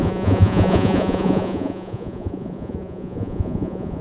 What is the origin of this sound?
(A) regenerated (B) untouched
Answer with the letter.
A